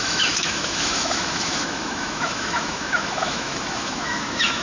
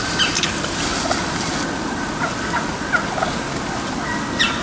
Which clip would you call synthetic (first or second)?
first